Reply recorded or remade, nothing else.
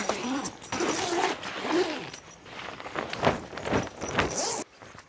recorded